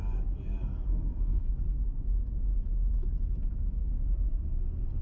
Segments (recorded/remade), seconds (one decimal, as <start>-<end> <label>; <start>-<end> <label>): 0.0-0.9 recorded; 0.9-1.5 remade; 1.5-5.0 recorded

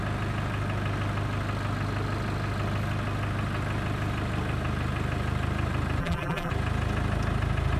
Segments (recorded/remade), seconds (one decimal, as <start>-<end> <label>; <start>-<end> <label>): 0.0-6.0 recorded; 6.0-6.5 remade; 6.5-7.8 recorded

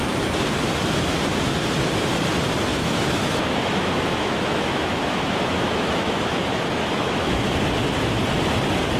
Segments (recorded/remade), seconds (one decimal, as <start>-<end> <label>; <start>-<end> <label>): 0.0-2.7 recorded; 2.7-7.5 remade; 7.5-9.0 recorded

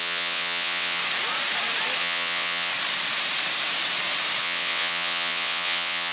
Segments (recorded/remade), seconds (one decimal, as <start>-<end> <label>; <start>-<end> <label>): 0.0-1.0 remade; 1.0-2.0 recorded; 2.0-2.7 remade; 2.7-4.4 recorded; 4.4-6.1 remade

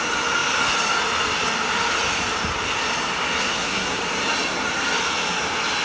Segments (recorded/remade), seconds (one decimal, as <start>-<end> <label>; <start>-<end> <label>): 0.0-3.4 recorded; 3.4-4.0 remade; 4.0-5.8 recorded

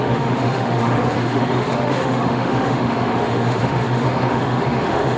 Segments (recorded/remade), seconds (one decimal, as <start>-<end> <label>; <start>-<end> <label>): 0.0-5.2 remade

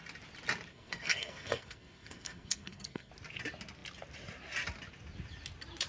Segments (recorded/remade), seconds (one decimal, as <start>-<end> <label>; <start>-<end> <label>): 0.0-0.7 recorded; 0.7-3.1 remade; 3.1-5.9 recorded